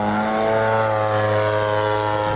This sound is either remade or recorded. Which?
recorded